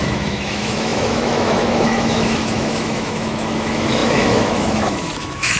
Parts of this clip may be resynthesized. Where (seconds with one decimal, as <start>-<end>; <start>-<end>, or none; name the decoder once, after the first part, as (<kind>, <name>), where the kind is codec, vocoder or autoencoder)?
0.0-5.6 (autoencoder, DAC-VAE)